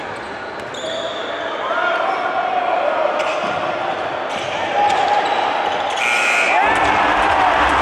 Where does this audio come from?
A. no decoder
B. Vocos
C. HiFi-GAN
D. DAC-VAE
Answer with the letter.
A